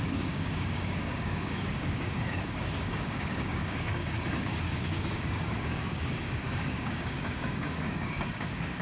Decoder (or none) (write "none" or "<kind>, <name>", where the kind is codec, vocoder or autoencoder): codec, DAC